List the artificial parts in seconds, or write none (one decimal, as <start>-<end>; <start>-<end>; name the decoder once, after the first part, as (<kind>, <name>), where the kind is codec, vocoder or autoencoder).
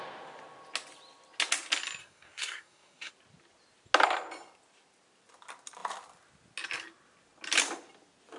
2.0-3.1 (codec, SNAC)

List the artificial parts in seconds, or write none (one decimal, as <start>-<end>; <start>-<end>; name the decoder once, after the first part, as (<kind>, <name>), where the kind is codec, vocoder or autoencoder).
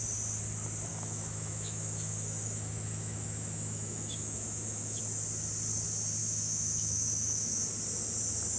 0.9-5.0 (autoencoder, DAC-VAE); 6.2-7.6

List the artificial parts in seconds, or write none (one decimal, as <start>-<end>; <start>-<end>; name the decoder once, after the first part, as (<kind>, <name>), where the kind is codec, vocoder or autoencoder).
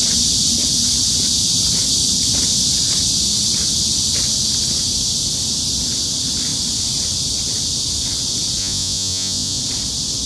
8.6-9.6 (vocoder, Vocos)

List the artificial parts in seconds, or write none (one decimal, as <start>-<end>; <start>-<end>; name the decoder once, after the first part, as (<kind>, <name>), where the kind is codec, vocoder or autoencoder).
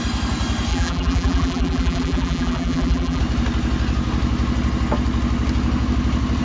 0.7-3.2 (vocoder, BigVGAN v2)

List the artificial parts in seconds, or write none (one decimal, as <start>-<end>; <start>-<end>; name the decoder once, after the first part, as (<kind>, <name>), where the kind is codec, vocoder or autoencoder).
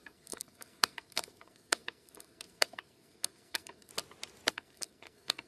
0.0-3.9 (codec, SNAC); 4.5-5.5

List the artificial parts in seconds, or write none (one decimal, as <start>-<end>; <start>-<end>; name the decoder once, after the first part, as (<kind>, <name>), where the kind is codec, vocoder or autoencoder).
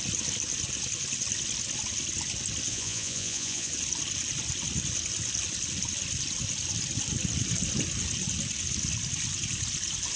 2.7-3.7 (vocoder, Vocos)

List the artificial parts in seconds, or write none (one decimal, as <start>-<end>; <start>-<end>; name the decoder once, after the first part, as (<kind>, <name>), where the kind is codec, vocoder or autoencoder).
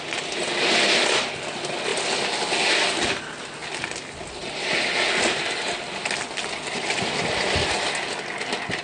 1.9-2.5 (vocoder, BigVGAN v2); 3.6-7.7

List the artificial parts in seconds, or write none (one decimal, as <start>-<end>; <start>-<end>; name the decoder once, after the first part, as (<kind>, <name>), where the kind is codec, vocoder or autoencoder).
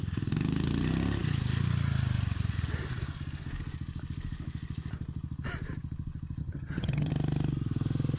6.4-7.1 (vocoder, HiFi-GAN)